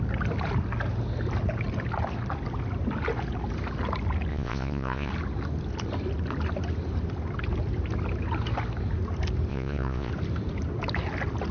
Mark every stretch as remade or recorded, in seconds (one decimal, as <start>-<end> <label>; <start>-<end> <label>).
0.0-4.3 recorded; 4.3-5.1 remade; 5.1-9.5 recorded; 9.5-10.1 remade; 10.1-11.5 recorded